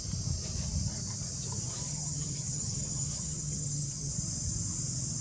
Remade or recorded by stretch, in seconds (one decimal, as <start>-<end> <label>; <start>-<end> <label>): 0.0-1.9 recorded; 1.9-4.1 remade; 4.1-5.2 recorded